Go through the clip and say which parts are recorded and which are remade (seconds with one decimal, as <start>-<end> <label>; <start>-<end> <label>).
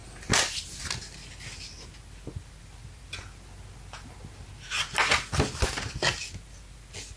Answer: 0.0-7.2 recorded